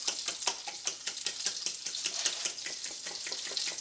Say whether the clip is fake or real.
real